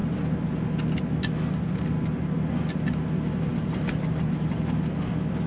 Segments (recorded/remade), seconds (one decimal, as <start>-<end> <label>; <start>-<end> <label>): 0.0-5.5 recorded